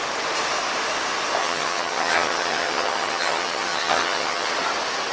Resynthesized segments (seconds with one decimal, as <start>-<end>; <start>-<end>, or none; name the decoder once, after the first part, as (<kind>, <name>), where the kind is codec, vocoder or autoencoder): 1.4-4.5 (vocoder, HiFi-GAN)